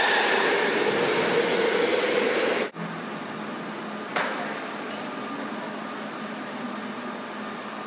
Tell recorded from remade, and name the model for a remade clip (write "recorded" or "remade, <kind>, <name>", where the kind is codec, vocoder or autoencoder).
recorded